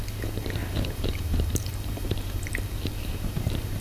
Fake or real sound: fake